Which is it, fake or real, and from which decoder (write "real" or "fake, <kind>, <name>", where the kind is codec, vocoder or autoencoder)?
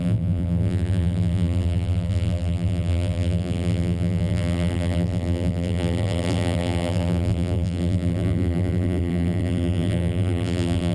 fake, vocoder, BigVGAN v2